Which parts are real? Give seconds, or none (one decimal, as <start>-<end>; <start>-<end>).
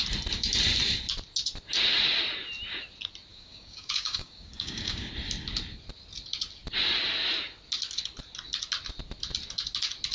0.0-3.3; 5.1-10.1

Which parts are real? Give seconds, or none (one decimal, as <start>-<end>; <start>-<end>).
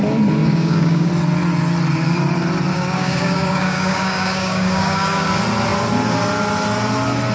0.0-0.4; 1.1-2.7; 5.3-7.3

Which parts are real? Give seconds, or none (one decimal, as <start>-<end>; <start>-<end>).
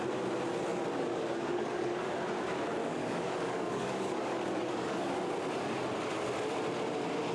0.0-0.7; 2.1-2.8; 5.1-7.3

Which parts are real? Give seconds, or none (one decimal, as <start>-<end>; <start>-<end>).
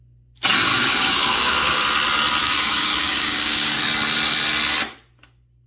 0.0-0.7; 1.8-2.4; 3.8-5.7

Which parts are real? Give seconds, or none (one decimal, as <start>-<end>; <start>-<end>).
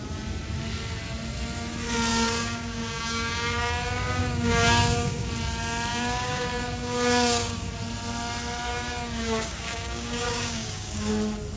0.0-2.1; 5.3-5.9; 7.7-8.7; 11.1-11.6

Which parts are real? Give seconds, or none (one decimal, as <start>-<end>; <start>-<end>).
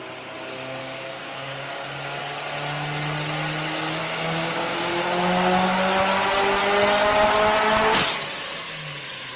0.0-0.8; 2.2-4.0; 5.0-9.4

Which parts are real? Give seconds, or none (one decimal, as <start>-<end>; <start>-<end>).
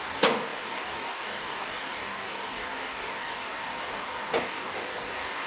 none